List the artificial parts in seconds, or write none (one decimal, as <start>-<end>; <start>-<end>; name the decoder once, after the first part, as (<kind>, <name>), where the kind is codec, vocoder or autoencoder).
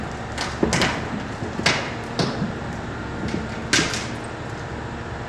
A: none